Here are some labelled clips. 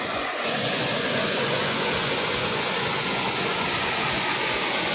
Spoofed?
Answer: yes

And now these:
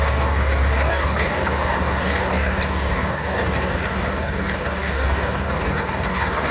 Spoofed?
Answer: yes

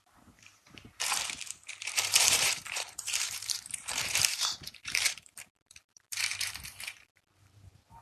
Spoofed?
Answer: yes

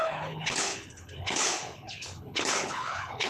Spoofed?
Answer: yes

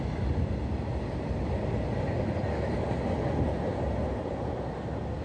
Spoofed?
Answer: no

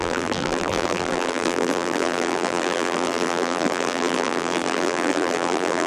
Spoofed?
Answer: yes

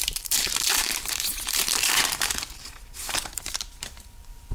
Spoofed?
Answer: yes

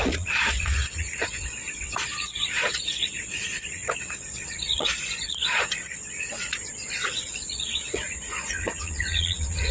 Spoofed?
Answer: yes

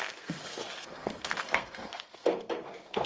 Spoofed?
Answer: yes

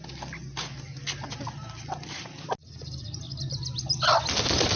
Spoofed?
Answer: no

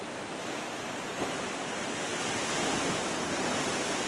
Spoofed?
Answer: no